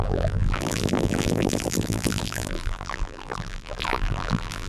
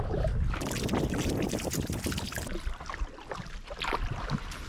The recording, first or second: second